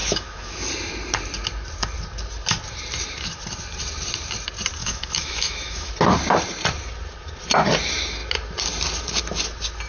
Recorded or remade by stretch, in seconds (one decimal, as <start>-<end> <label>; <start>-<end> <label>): 0.0-0.7 remade; 0.7-4.8 recorded; 4.8-5.9 remade; 5.9-9.9 recorded